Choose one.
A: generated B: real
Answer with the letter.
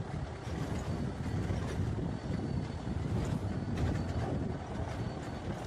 B